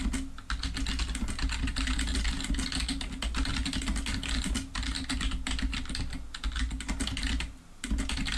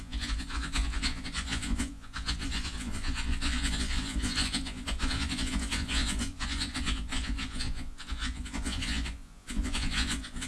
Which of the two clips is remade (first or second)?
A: second